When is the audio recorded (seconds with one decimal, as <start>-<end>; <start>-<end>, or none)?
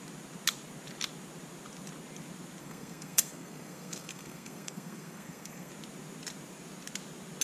0.0-2.6; 5.7-7.4